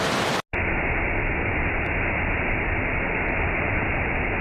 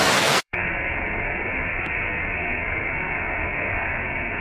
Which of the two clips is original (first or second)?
first